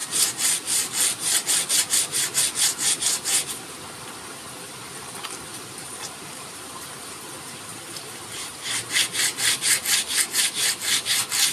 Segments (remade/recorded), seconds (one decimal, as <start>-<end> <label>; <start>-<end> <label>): 0.0-1.7 remade; 1.7-5.5 recorded; 5.5-8.9 remade; 8.9-11.5 recorded